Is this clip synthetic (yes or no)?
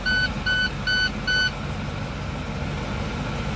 no